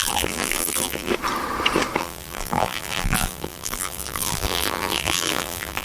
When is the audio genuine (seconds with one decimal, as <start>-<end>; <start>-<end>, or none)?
1.1-2.0